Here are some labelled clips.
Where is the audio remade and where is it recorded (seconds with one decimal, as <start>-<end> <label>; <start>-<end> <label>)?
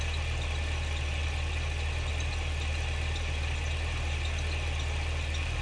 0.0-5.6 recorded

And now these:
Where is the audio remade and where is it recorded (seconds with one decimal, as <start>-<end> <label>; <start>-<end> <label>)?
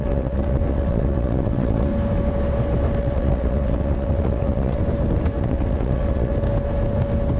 0.0-1.9 remade; 1.9-3.0 recorded; 3.0-4.8 remade; 4.8-5.4 recorded; 5.4-6.3 remade; 6.3-7.4 recorded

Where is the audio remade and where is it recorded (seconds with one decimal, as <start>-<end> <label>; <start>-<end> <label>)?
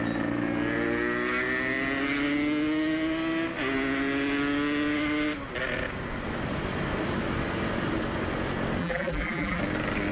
0.0-8.8 recorded; 8.8-9.6 remade; 9.6-10.1 recorded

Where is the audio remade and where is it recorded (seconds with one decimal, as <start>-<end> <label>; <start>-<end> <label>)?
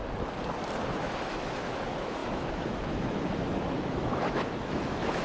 0.0-0.9 recorded; 0.9-5.2 remade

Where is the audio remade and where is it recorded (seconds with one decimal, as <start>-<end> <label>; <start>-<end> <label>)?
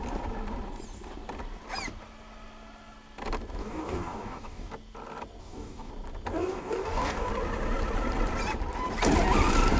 0.0-3.6 recorded; 3.6-4.7 remade; 4.7-5.4 recorded; 5.4-5.9 remade; 5.9-6.4 recorded; 6.4-7.3 remade; 7.3-9.8 recorded